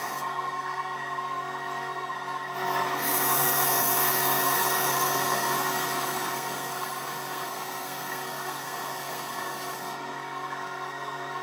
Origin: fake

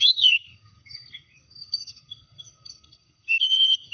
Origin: fake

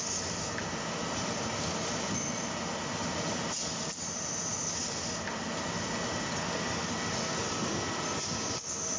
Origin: real